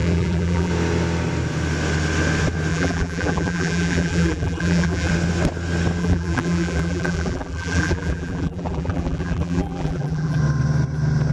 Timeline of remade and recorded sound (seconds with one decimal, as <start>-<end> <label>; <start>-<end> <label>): 0.0-0.7 remade; 0.7-2.7 recorded; 2.7-5.1 remade; 5.1-6.0 recorded; 6.0-10.4 remade; 10.4-11.3 recorded